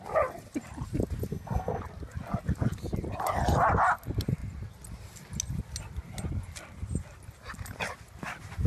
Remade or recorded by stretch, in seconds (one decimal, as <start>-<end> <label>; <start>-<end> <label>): 0.0-1.3 recorded; 1.3-1.8 remade; 1.8-8.7 recorded